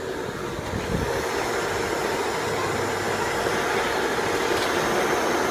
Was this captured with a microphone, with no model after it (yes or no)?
yes